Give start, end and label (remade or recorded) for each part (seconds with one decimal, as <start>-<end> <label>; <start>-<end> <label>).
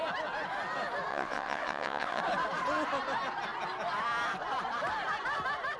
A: 0.0-1.1 recorded; 1.1-2.2 remade; 2.2-5.8 recorded